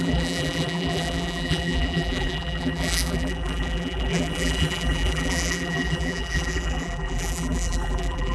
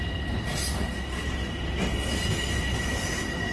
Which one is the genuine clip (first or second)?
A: second